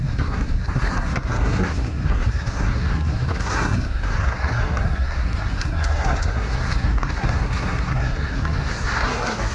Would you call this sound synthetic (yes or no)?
yes